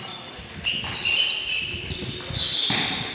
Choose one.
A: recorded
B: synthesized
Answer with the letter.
A